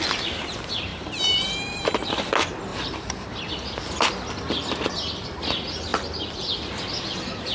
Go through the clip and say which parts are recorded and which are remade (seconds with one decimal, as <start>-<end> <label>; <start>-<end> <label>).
0.0-0.9 recorded; 0.9-2.3 remade; 2.3-2.7 recorded; 2.7-3.5 remade; 3.5-7.5 recorded